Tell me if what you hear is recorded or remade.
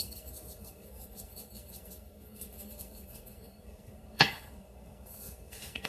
remade